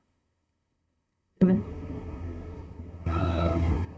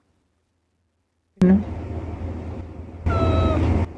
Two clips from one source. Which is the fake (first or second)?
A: first